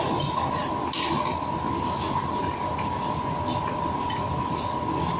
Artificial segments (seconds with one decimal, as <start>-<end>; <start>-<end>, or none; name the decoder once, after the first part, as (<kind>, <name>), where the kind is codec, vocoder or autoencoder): none